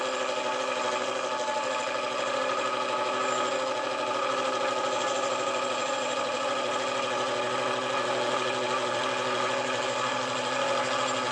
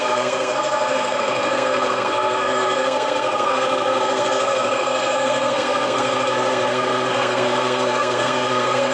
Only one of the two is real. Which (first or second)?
first